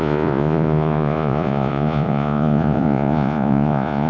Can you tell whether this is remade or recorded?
remade